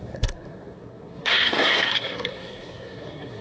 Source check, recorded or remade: remade